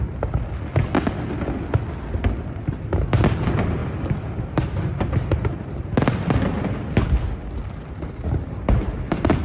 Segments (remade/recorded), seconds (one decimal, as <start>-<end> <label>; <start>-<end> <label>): 0.0-9.4 recorded